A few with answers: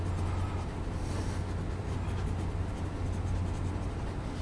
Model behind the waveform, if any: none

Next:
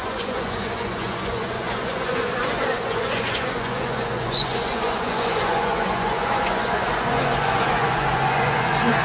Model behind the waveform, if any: vocoder, Vocos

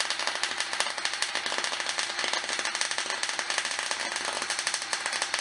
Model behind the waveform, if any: none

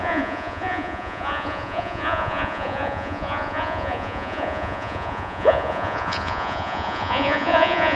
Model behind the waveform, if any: vocoder, Vocos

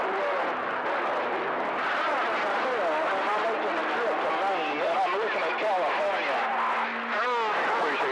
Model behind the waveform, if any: none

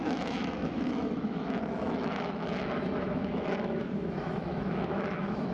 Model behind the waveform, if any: autoencoder, DAC-VAE